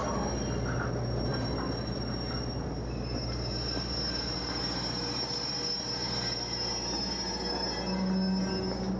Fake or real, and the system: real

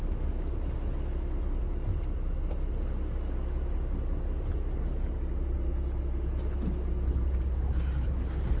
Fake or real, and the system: real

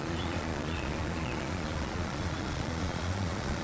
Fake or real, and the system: fake, vocoder, Vocos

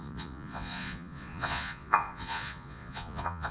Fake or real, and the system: fake, vocoder, Vocos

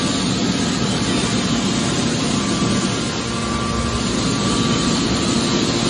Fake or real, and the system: real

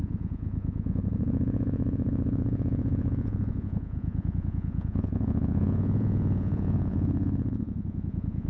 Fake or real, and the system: fake, vocoder, Vocos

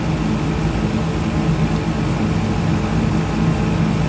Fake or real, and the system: real